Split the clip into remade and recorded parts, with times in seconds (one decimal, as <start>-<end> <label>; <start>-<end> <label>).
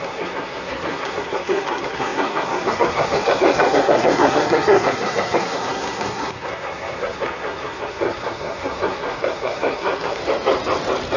0.0-10.2 remade; 10.2-11.2 recorded